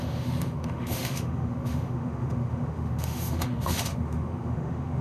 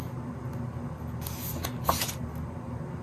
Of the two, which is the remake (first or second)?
first